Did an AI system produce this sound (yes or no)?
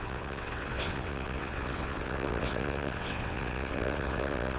yes